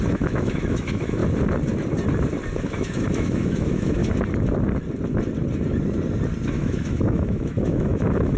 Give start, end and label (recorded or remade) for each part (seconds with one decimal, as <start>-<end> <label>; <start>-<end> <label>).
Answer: 0.0-1.2 remade; 1.2-2.6 recorded; 2.6-4.0 remade; 4.0-6.5 recorded; 6.5-8.4 remade